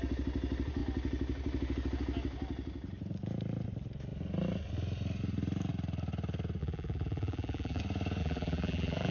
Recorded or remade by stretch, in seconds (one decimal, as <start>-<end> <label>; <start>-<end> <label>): 0.0-6.6 recorded; 6.6-7.8 remade; 7.8-8.2 recorded; 8.2-9.1 remade